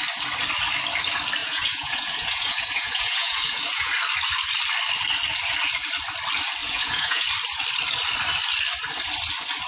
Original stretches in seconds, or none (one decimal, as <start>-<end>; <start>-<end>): 0.0-1.4; 3.9-6.6; 7.3-9.7